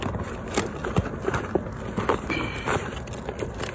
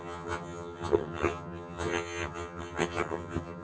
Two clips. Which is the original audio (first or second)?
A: first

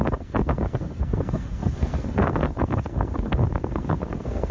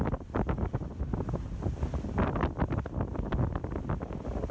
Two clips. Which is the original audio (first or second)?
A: second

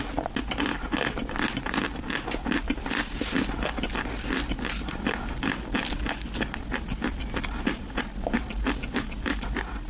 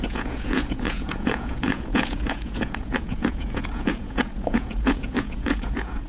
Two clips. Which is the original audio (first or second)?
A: first